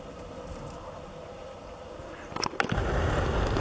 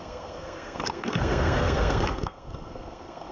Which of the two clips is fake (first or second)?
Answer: second